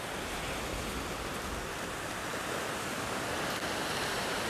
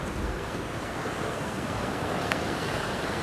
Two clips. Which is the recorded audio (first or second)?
first